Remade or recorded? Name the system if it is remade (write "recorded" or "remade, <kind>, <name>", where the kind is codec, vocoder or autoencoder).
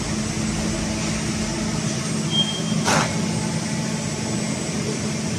recorded